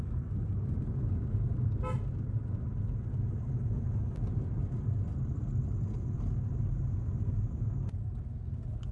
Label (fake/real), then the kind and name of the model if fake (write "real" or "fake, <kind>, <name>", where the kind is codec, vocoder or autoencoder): real